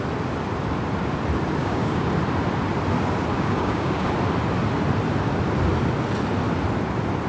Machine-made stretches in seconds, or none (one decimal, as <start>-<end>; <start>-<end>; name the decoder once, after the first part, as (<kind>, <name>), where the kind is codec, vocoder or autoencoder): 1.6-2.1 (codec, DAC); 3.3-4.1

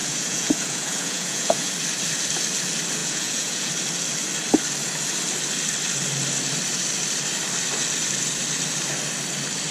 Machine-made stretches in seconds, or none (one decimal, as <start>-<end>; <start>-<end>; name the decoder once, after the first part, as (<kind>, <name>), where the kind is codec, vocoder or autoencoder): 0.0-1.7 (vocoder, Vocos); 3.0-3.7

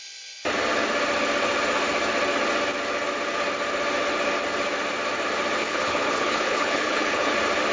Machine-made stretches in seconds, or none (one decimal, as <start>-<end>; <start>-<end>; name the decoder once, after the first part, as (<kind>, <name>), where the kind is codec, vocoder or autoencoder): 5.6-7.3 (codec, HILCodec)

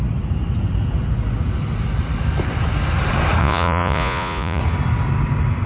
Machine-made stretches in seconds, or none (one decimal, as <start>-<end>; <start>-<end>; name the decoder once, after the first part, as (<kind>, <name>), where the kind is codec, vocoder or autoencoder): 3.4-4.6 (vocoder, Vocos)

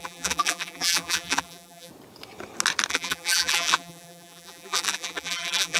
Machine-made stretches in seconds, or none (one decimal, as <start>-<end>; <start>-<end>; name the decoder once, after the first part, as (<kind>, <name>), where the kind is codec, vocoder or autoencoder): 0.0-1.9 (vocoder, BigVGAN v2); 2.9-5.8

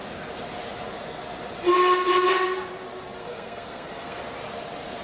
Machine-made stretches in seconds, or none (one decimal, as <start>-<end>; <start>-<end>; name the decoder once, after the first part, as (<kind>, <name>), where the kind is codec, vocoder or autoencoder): 3.2-4.2 (codec, SNAC)

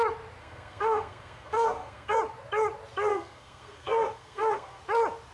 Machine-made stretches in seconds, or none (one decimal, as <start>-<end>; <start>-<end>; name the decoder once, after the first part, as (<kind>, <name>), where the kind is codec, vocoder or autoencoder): 0.4-2.2 (codec, SNAC); 3.1-4.8

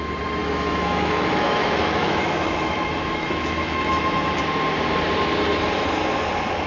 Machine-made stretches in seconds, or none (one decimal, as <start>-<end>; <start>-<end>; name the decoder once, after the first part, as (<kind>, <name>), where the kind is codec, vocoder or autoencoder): 0.4-4.4 (autoencoder, DAC-VAE)